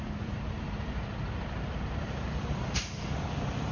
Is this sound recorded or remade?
remade